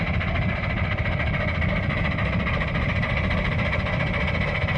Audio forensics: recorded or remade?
recorded